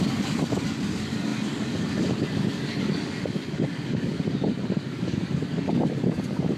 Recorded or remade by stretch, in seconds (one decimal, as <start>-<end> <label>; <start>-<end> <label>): 0.0-6.6 remade